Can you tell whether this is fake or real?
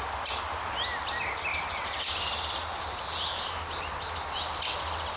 real